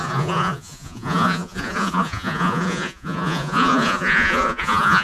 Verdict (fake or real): fake